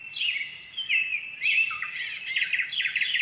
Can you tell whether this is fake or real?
real